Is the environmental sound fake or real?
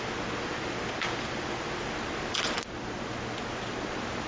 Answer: real